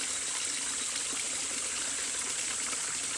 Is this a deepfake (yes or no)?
no